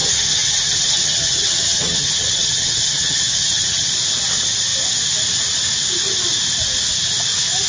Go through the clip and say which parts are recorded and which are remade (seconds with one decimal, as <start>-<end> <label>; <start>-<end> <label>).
0.0-3.9 remade; 3.9-7.7 recorded